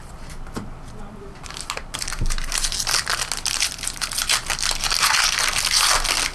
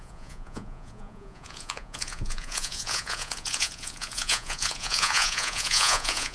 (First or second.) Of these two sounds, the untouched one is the first